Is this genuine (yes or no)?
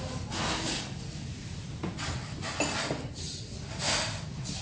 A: yes